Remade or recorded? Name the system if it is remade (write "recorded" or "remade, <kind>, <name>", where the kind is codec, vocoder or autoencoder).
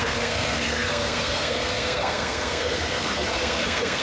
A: remade, codec, SNAC